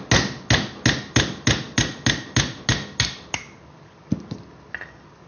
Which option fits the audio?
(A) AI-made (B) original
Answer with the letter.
B